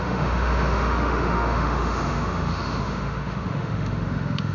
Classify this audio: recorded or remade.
remade